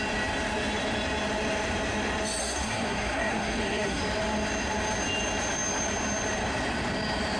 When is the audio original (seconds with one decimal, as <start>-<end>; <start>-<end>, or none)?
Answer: 0.0-2.4; 4.0-7.4